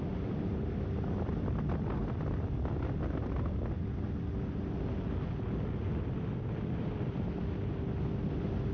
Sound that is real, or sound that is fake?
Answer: real